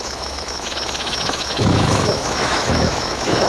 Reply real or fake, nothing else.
fake